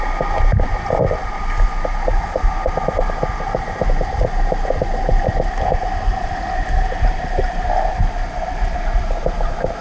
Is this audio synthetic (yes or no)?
no